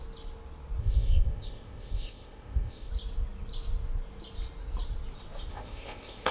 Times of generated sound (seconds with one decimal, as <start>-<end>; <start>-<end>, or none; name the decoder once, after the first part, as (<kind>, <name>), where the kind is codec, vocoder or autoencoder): 0.8-2.9 (codec, ZipCodec); 5.5-6.3